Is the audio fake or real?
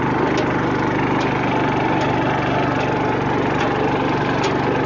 real